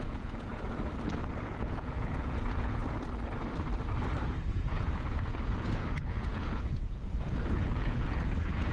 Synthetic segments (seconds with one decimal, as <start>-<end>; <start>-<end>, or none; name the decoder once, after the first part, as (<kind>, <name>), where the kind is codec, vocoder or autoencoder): 0.0-0.5 (vocoder, Vocos); 1.4-2.8; 4.5-8.7